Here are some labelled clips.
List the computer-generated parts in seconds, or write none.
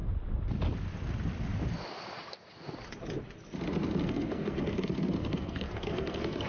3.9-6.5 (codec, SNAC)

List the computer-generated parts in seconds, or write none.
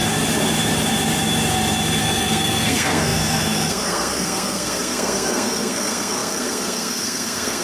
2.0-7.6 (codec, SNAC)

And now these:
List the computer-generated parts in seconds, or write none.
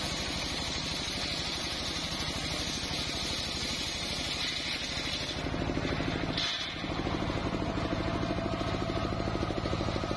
none